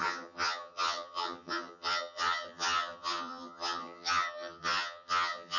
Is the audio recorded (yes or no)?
no